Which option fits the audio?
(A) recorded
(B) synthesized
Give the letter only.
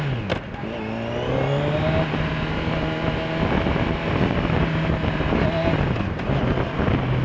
A